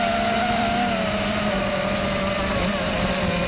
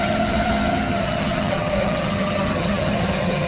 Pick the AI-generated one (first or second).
second